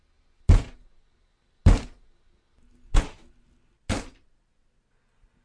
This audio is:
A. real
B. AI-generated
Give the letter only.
A